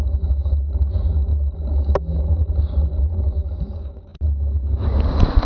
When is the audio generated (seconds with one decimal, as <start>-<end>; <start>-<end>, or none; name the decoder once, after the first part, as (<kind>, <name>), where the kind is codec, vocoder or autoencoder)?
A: none